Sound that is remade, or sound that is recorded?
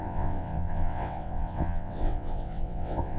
remade